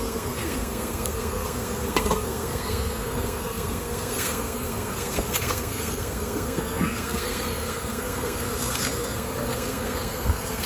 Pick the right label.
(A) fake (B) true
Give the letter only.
A